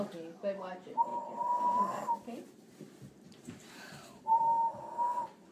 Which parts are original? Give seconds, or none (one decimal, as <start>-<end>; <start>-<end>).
0.0-1.1; 4.4-5.5